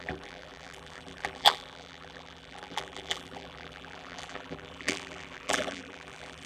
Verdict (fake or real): fake